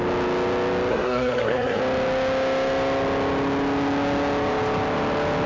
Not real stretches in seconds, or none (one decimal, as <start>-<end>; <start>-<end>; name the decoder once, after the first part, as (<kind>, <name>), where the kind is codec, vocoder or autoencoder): 0.9-1.8 (codec, SNAC)